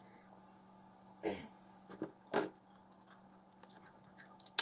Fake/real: real